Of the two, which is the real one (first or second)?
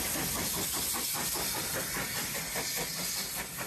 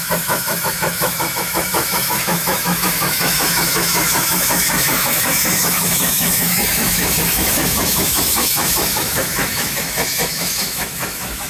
first